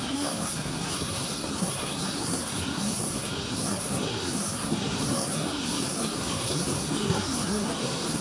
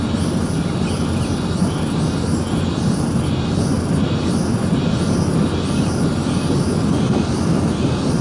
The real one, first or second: second